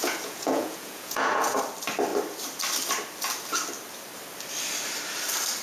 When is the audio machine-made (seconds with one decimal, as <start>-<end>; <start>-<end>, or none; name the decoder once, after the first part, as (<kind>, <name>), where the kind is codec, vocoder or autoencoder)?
0.0-1.6 (vocoder, Vocos)